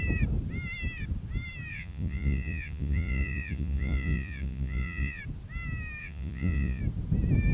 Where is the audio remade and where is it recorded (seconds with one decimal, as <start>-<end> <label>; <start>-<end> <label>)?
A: 0.0-1.7 recorded; 1.7-5.2 remade; 5.2-6.0 recorded; 6.0-6.8 remade; 6.8-7.5 recorded